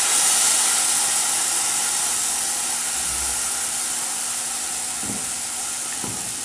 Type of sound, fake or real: real